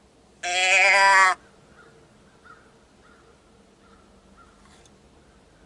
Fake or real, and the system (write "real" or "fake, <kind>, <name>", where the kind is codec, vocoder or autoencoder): real